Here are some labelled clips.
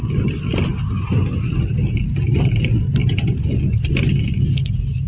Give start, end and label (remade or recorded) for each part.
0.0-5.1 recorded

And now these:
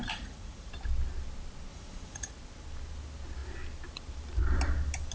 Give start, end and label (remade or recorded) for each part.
0.0-0.7 remade; 0.7-1.7 recorded; 1.7-2.3 remade; 2.3-5.1 recorded

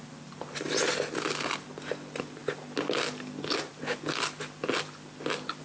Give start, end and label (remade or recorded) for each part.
0.0-5.6 recorded

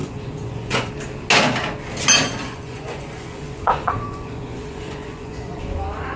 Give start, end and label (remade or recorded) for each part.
0.0-0.9 remade; 0.9-2.4 recorded; 2.4-6.2 remade

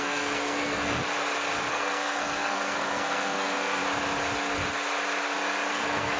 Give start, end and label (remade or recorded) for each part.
0.0-1.0 remade; 1.0-1.7 recorded; 1.7-3.8 remade; 3.8-5.7 recorded; 5.7-6.2 remade

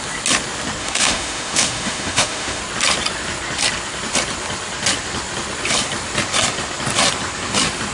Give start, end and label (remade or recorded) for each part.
0.0-0.8 recorded; 0.8-2.6 remade; 2.6-7.9 recorded

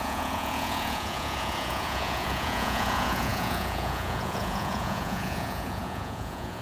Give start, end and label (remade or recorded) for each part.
0.0-6.6 remade